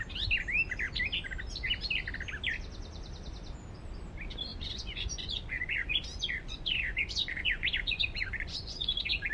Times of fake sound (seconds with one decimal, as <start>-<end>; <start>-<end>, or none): 4.5-9.3